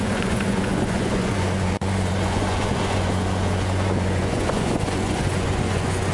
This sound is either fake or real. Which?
fake